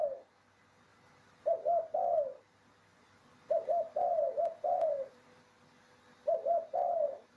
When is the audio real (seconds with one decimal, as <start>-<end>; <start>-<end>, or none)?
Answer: 0.0-7.4